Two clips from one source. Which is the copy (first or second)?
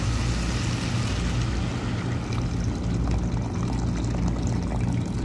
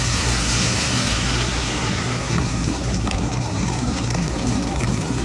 second